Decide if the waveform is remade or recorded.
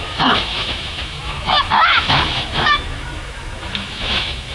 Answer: remade